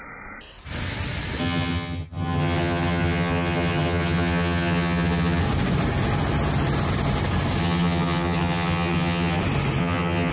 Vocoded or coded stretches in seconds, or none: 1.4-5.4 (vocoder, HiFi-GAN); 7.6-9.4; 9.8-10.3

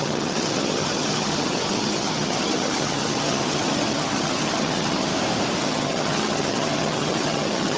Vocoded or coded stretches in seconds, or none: 0.0-5.1 (vocoder, HiFi-GAN); 5.6-7.8